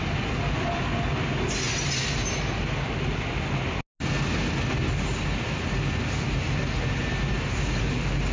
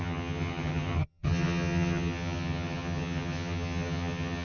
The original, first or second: first